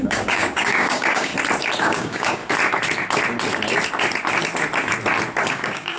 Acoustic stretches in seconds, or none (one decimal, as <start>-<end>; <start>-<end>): 1.3-1.8; 2.4-5.5